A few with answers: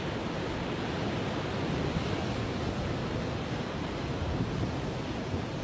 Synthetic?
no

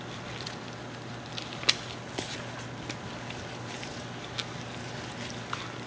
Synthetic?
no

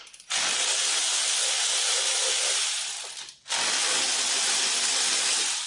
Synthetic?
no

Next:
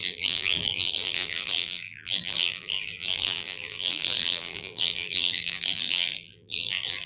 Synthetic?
yes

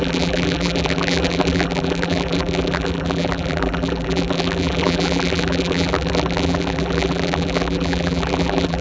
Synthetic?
yes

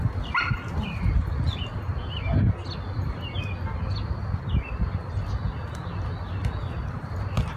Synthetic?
no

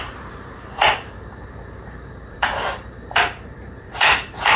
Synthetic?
yes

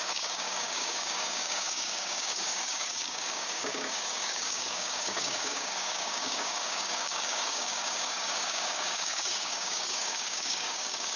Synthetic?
yes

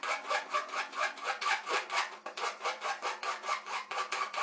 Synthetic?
yes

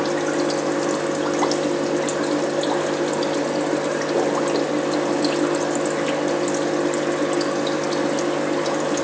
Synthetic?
no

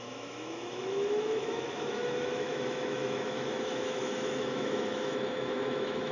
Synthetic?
yes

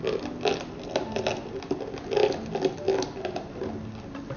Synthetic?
no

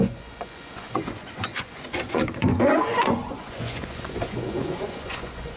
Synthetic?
yes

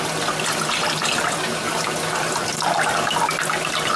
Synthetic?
no